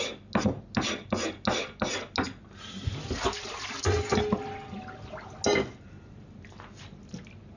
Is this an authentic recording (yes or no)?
yes